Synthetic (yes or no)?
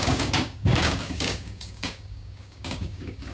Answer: yes